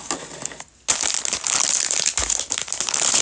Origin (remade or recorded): recorded